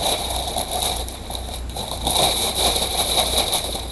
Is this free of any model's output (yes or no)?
no